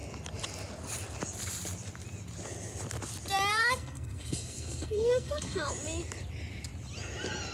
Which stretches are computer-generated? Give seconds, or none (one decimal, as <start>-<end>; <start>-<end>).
3.5-5.7